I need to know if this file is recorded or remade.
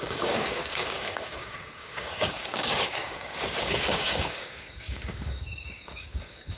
remade